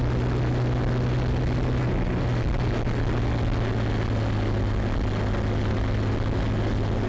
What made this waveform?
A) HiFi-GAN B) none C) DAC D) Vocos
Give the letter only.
B